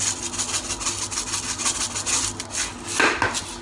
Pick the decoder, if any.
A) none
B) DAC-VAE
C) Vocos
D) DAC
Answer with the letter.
A